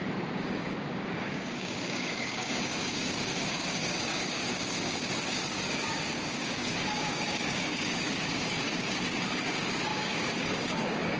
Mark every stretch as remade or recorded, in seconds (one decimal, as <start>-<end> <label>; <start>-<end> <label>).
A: 0.0-11.2 remade